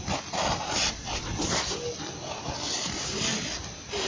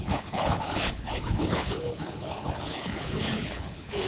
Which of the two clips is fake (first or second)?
second